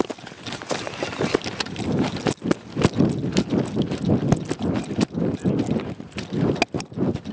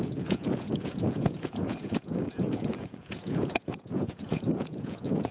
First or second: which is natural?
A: first